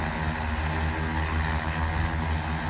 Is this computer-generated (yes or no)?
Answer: no